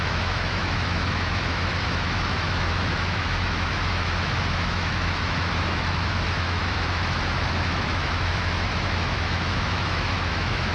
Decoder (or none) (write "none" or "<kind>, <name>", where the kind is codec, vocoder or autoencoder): autoencoder, DAC-VAE